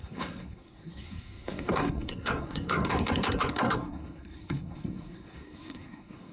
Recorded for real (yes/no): no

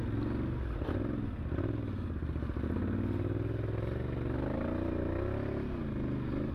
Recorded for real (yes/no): yes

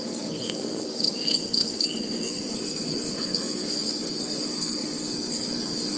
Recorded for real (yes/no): no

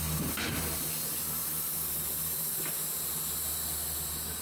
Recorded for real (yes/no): yes